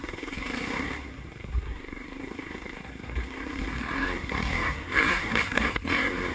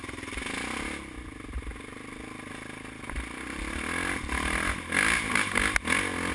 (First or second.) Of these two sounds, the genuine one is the second